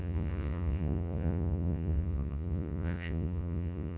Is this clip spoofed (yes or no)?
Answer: yes